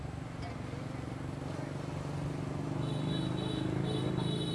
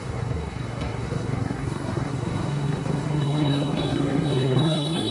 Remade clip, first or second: second